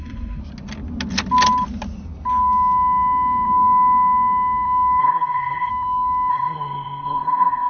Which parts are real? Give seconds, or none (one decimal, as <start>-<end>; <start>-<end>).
0.4-5.0; 5.7-6.3